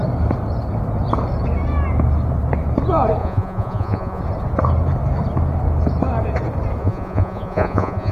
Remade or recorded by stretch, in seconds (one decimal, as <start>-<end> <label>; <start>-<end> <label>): 0.0-3.2 recorded; 3.2-4.2 remade; 4.2-6.8 recorded; 6.8-8.1 remade